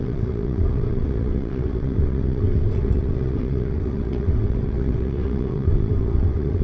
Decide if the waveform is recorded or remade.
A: remade